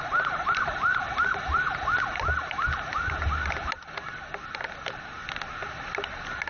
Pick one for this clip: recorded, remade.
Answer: recorded